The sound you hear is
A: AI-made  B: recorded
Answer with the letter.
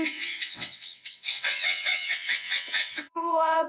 A